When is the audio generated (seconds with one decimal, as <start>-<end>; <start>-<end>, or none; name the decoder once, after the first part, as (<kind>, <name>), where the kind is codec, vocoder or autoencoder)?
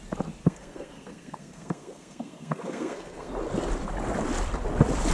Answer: 0.4-3.3 (codec, SNAC)